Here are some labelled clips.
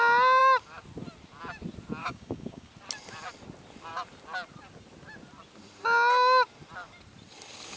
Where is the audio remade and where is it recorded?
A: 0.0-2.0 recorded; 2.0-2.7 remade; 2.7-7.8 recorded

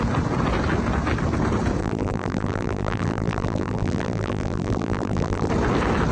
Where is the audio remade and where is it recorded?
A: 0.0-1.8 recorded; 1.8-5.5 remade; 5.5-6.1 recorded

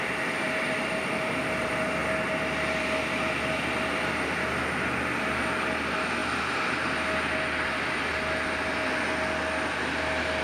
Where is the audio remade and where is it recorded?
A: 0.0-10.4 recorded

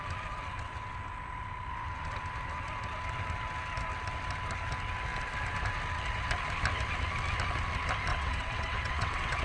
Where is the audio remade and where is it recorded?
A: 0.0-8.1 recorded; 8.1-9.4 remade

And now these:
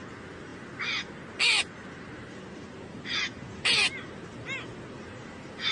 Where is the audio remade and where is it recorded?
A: 0.0-5.7 recorded

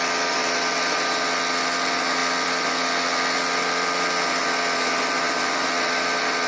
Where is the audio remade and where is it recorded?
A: 0.0-6.5 recorded

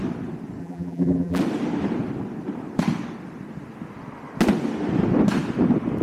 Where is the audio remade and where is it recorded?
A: 0.0-0.6 recorded; 0.6-1.4 remade; 1.4-6.0 recorded

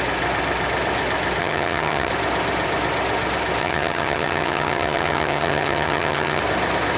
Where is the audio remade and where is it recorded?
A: 0.0-1.4 recorded; 1.4-2.1 remade; 2.1-3.6 recorded; 3.6-6.4 remade; 6.4-7.0 recorded